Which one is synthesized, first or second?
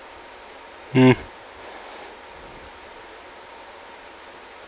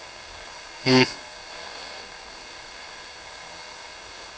second